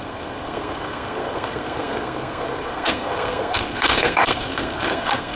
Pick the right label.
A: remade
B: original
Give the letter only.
A